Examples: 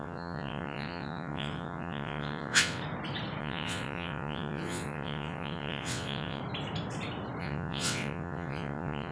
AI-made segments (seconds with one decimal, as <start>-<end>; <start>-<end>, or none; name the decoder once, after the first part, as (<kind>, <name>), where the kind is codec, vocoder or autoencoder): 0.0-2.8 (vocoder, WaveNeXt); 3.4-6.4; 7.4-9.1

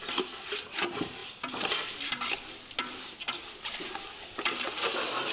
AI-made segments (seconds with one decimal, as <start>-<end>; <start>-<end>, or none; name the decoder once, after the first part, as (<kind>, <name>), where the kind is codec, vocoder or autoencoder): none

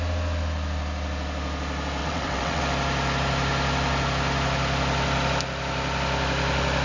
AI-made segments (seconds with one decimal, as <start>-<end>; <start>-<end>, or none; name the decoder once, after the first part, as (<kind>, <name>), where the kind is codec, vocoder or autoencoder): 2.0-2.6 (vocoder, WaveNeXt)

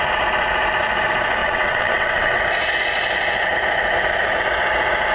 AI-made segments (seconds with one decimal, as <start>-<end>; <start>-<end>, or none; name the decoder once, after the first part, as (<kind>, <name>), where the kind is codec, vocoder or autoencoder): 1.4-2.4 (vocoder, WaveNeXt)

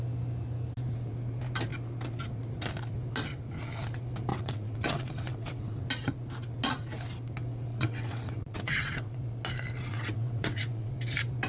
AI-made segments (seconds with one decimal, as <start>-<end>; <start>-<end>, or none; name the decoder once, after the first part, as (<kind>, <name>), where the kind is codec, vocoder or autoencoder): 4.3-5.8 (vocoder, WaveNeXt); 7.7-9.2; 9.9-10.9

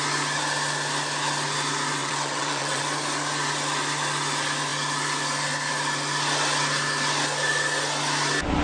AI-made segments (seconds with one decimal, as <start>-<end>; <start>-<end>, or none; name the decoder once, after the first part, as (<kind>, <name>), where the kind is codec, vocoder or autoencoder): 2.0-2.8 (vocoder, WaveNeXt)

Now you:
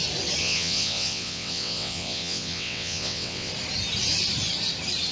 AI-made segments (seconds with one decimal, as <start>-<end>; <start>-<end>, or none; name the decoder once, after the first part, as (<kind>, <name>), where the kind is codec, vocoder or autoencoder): 0.4-3.5 (vocoder, WaveNeXt)

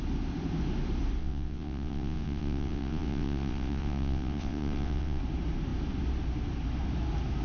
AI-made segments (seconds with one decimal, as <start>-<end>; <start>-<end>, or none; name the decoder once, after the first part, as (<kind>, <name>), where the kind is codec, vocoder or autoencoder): 1.2-5.2 (vocoder, WaveNeXt)